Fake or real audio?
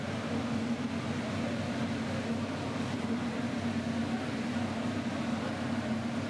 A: real